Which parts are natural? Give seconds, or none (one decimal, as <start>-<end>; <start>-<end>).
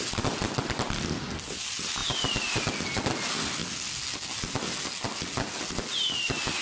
0.0-6.6